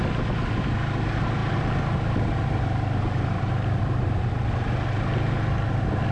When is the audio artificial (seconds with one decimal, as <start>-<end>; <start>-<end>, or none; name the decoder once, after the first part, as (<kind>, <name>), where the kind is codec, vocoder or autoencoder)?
none